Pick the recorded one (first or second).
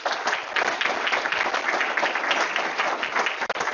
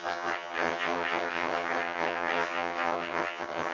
first